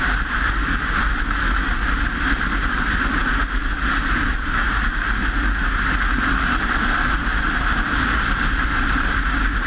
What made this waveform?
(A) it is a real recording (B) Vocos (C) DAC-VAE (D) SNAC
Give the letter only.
A